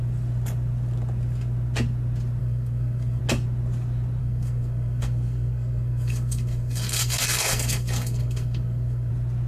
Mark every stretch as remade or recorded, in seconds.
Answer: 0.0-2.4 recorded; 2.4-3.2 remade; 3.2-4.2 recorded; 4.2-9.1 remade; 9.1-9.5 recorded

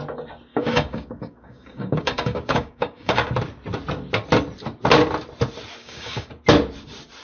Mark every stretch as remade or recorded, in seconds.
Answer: 0.0-0.5 recorded; 0.5-3.3 remade; 3.3-5.8 recorded; 5.8-6.3 remade; 6.3-7.2 recorded

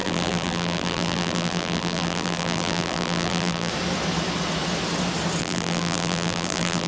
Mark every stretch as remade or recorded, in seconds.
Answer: 0.0-3.7 remade; 3.7-5.4 recorded; 5.4-6.9 remade

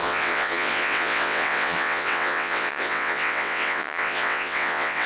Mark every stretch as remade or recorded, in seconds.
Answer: 0.0-5.1 remade

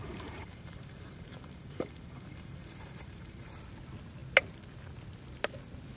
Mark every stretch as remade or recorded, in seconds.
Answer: 0.0-3.6 remade; 3.6-6.0 recorded

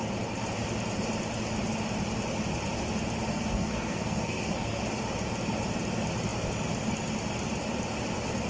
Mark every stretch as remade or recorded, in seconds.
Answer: 0.0-3.3 recorded; 3.3-4.8 remade; 4.8-8.5 recorded

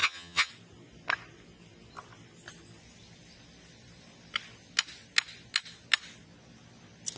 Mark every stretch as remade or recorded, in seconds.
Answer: 0.0-0.5 remade; 0.5-7.2 recorded

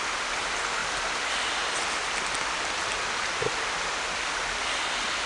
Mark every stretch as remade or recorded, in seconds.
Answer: 0.0-5.3 recorded